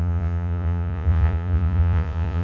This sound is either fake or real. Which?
fake